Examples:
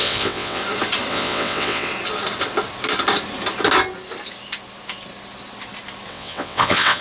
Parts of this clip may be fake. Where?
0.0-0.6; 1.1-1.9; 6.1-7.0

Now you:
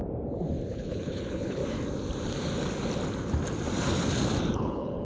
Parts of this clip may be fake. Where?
0.7-1.6; 4.6-5.0

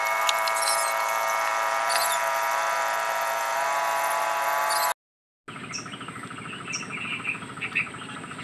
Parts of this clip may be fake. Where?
1.5-2.2

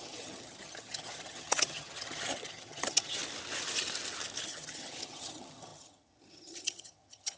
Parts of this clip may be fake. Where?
0.0-3.2; 4.4-7.4

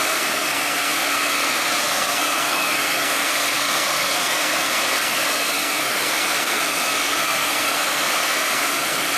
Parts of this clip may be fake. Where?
0.0-9.2

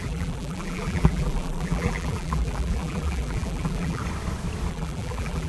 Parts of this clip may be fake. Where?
0.0-4.0; 4.7-5.5